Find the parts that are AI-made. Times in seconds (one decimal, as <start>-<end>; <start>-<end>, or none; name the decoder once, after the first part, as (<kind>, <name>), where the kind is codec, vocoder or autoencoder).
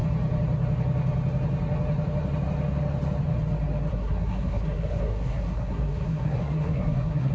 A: 3.9-7.3 (codec, SNAC)